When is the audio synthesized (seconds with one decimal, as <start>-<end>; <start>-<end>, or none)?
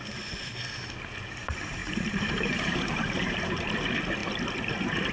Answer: 1.8-3.7